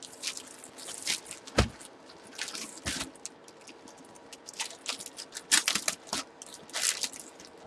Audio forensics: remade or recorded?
recorded